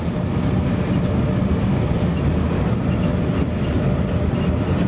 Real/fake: real